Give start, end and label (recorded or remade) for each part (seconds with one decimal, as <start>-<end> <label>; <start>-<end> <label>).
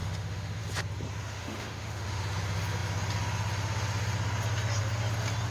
0.0-0.6 remade; 0.6-1.2 recorded; 1.2-2.2 remade; 2.2-5.5 recorded